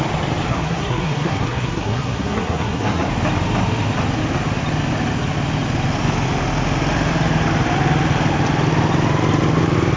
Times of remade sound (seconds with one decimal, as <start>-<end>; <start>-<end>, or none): 0.5-3.1